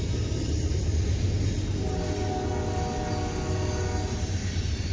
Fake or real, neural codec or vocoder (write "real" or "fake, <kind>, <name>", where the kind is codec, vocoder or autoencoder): real